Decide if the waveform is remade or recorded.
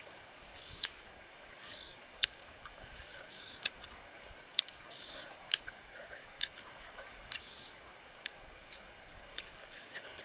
remade